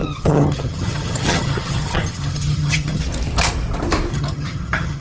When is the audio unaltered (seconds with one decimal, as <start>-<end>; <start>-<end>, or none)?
3.0-4.1

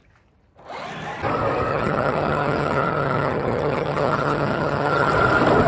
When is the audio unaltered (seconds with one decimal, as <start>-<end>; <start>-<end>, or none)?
0.0-1.7; 5.1-5.7

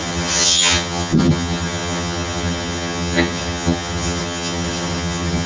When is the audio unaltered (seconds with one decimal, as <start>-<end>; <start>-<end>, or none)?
none

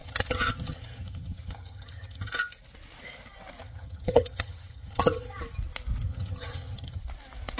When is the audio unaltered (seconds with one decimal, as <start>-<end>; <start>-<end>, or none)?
2.3-3.6; 5.4-6.1; 7.0-7.6

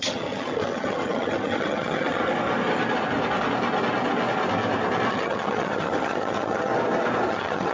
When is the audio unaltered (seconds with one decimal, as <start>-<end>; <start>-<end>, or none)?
2.2-5.1; 6.7-7.3

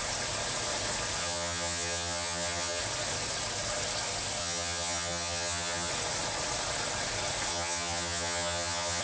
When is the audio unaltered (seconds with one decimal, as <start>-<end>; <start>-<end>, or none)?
0.0-1.2; 2.8-4.4; 5.9-7.5